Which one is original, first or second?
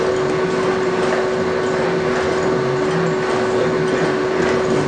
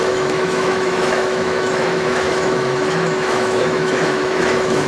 first